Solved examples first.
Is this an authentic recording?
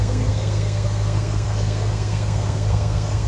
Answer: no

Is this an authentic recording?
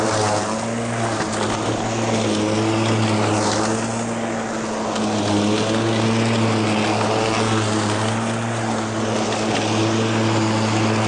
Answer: yes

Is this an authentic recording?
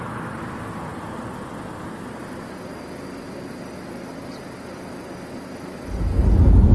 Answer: yes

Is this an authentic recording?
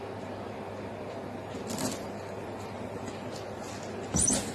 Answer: yes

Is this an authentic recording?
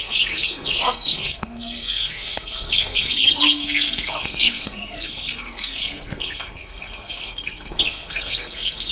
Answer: no